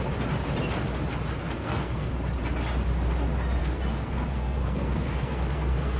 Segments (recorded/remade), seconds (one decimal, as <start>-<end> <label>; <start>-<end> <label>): 0.0-1.4 recorded; 1.4-2.1 remade; 2.1-3.6 recorded; 3.6-6.0 remade